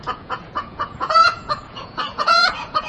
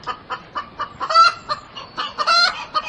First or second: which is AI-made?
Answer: first